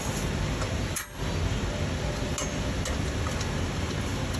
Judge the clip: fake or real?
real